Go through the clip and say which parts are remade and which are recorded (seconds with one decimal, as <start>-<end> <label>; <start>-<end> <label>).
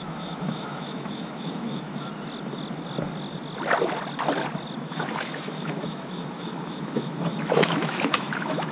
0.0-2.1 remade; 2.1-4.8 recorded; 4.8-8.7 remade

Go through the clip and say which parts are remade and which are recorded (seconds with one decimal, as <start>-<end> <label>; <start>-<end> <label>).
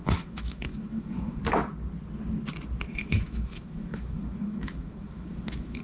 0.0-1.4 remade; 1.4-2.9 recorded; 2.9-5.8 remade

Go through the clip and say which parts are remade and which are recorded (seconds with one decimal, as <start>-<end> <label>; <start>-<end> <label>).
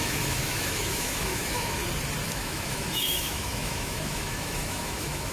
0.0-1.8 remade; 1.8-2.3 recorded; 2.3-5.3 remade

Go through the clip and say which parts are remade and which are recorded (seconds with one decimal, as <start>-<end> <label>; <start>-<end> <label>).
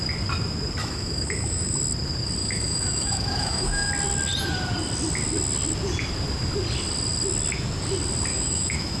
0.0-0.8 recorded; 0.8-1.8 remade; 1.8-2.4 recorded; 2.4-3.9 remade; 3.9-8.3 recorded; 8.3-9.0 remade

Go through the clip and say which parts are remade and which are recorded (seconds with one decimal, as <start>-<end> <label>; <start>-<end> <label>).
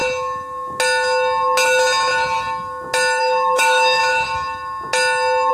0.0-3.2 recorded; 3.2-4.0 remade; 4.0-5.5 recorded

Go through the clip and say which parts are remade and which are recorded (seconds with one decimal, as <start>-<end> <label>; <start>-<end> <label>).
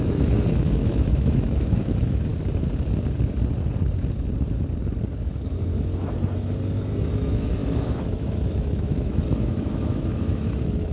0.0-2.3 remade; 2.3-7.1 recorded; 7.1-10.9 remade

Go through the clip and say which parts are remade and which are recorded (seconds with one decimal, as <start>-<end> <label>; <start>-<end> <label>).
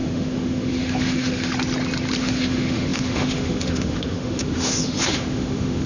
0.0-1.5 remade; 1.5-2.2 recorded; 2.2-5.9 remade